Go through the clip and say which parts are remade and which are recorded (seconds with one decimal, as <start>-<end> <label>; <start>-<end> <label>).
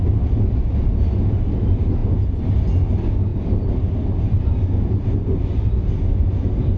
0.0-6.8 recorded